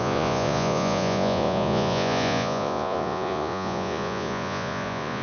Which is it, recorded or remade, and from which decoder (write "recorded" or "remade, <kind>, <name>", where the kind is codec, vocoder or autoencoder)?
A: remade, vocoder, Vocos